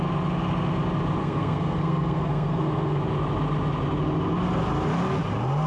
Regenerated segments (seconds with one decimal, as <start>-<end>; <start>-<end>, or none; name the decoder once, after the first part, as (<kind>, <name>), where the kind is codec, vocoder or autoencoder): 1.2-3.0 (codec, SNAC)